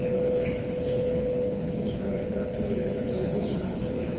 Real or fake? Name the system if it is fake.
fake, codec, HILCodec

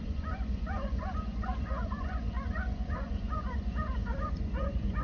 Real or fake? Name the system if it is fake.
fake, vocoder, Vocos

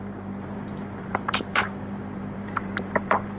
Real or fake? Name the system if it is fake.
fake, vocoder, BigVGAN v2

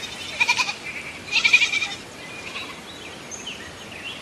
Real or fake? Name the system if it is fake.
fake, vocoder, BigVGAN v2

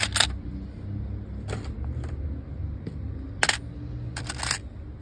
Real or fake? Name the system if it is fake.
real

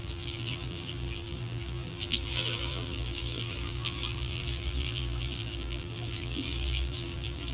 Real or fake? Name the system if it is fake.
fake, vocoder, BigVGAN v2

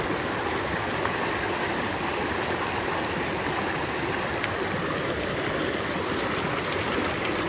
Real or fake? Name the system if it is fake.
real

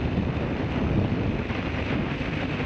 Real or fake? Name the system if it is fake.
real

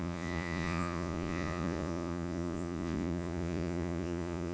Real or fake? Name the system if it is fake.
fake, vocoder, Vocos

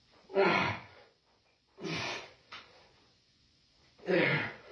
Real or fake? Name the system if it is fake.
fake, vocoder, Vocos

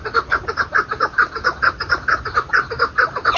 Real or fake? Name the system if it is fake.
real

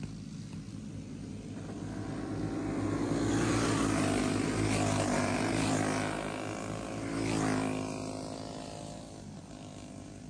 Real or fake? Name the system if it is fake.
real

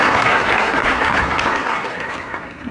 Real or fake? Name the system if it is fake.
fake, codec, SNAC